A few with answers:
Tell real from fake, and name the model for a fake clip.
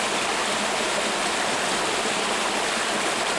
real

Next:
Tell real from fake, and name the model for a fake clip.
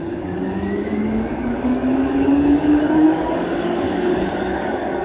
fake, codec, DAC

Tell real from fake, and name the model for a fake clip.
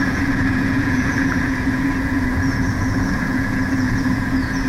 fake, vocoder, Vocos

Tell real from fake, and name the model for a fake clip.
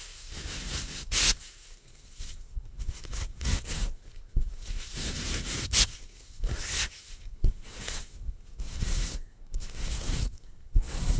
fake, codec, SNAC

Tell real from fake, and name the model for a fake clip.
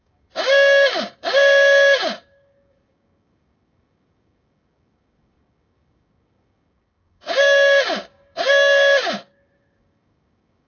fake, codec, DAC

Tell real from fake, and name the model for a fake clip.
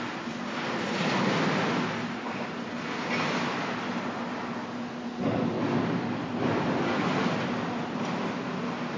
real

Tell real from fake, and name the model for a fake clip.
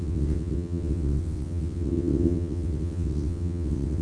fake, vocoder, WaveNeXt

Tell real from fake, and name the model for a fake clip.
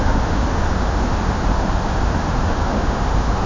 fake, autoencoder, DAC-VAE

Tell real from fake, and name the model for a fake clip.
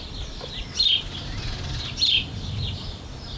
real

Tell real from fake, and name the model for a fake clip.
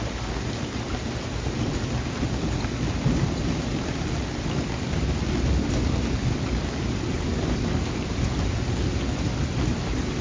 real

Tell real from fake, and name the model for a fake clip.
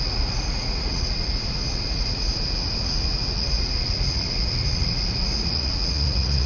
fake, vocoder, Vocos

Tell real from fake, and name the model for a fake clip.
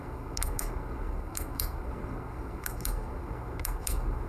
fake, codec, SNAC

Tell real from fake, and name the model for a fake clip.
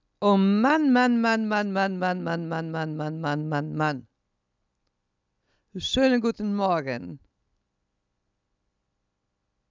real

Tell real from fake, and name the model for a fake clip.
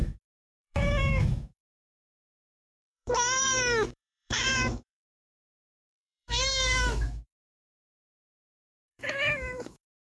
fake, autoencoder, DAC-VAE